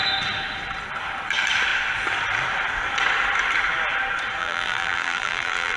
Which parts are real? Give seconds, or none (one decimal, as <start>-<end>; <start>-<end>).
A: 0.0-4.4